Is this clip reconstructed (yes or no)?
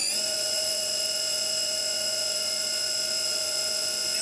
yes